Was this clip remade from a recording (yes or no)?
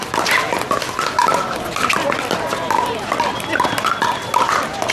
no